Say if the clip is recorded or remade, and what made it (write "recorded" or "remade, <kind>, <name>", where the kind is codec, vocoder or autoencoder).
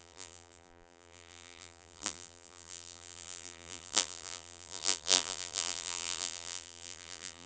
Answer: remade, vocoder, BigVGAN v2